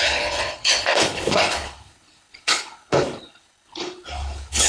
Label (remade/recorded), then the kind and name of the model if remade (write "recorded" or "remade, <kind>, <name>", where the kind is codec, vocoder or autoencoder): remade, codec, HILCodec